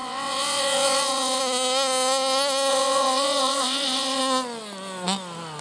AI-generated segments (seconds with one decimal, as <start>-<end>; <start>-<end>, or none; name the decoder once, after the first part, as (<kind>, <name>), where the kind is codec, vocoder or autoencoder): 0.0-1.4 (vocoder, WaveNeXt); 2.7-4.2